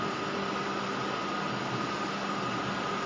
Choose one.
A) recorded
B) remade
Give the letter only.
A